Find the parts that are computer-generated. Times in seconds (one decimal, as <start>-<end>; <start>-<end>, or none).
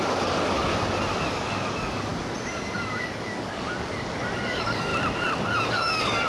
0.0-0.7; 1.3-2.1; 3.0-4.9; 5.7-6.3